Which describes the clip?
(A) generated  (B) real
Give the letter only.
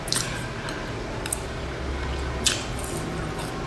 B